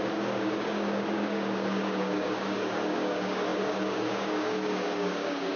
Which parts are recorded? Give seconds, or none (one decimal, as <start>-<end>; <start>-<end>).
none